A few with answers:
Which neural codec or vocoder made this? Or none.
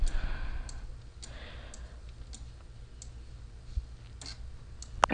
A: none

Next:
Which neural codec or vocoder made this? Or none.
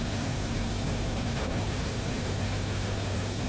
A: codec, SNAC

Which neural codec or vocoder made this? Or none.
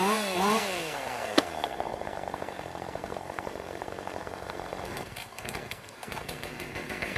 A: codec, SNAC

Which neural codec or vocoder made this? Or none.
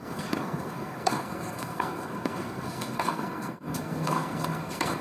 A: codec, SNAC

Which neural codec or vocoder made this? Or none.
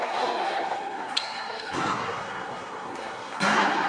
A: codec, SNAC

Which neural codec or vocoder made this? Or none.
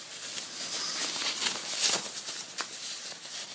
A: none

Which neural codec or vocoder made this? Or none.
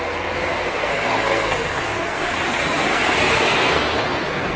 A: codec, SNAC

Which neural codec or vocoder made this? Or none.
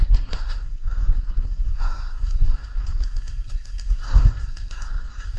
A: codec, SNAC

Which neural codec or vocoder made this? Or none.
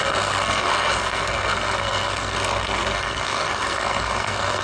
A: codec, SNAC